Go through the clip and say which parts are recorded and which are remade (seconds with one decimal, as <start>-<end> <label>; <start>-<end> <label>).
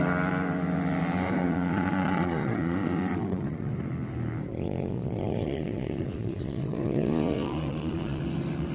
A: 0.0-1.4 recorded; 1.4-3.7 remade; 3.7-4.5 recorded; 4.5-8.2 remade; 8.2-8.7 recorded